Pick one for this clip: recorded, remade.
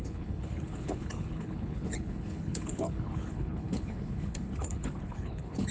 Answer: remade